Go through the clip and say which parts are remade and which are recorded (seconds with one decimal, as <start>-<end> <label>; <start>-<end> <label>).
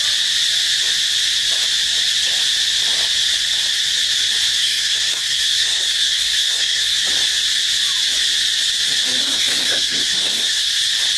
0.0-4.6 recorded; 4.6-7.0 remade; 7.0-9.2 recorded; 9.2-10.7 remade; 10.7-11.2 recorded